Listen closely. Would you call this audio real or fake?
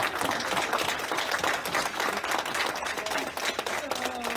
real